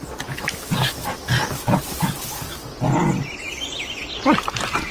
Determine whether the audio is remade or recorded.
recorded